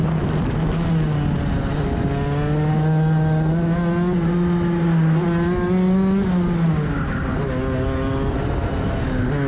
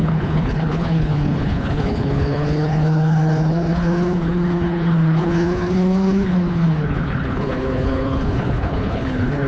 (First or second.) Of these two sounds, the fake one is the second